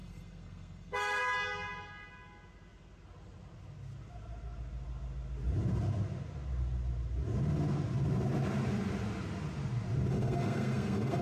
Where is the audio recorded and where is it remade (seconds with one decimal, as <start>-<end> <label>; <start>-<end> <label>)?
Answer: 0.0-1.2 remade; 1.2-10.1 recorded; 10.1-11.2 remade

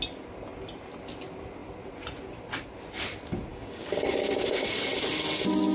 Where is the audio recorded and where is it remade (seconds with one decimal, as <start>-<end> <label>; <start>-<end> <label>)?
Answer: 0.0-3.5 recorded; 3.5-4.9 remade; 4.9-5.7 recorded